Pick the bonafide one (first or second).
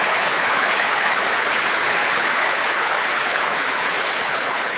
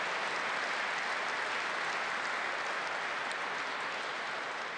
second